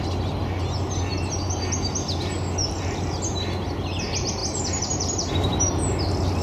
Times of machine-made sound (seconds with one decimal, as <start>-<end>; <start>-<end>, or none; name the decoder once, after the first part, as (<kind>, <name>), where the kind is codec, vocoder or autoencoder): none